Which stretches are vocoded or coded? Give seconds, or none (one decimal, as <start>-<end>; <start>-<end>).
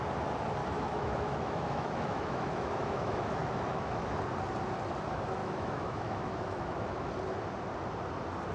0.6-4.1; 5.4-7.1